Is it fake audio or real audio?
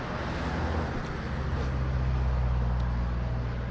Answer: real